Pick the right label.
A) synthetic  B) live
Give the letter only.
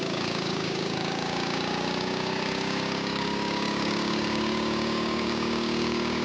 A